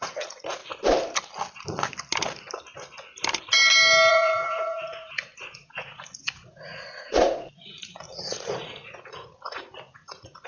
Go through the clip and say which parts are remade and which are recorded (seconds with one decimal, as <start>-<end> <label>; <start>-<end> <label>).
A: 0.0-0.6 remade; 0.6-4.1 recorded; 4.1-10.5 remade

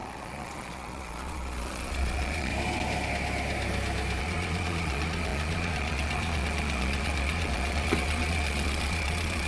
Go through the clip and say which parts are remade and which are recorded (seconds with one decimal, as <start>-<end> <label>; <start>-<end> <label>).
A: 0.0-2.5 remade; 2.5-4.2 recorded; 4.2-9.5 remade